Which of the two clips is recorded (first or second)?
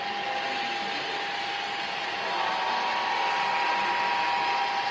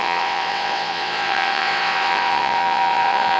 first